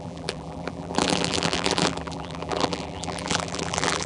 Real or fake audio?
fake